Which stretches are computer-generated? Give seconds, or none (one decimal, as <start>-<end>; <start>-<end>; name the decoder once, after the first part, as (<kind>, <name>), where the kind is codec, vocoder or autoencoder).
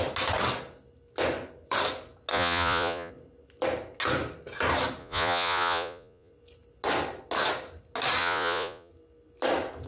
2.3-3.1 (vocoder, Vocos); 5.0-6.3; 8.2-8.9